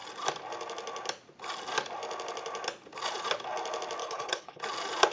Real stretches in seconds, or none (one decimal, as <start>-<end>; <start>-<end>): 0.0-4.0; 4.6-5.1